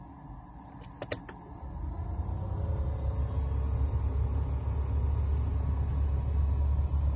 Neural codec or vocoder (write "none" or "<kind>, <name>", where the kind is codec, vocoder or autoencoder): none